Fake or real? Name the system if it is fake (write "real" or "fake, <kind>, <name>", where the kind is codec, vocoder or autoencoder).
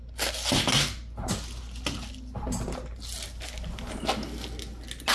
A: real